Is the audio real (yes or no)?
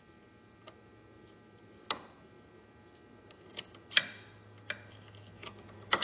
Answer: yes